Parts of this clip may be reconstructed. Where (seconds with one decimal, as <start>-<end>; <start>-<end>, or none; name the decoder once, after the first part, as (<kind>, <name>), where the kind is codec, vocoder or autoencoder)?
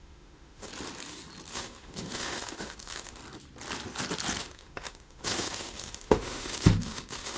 0.0-0.7 (autoencoder, DAC-VAE); 1.5-3.2; 4.4-7.4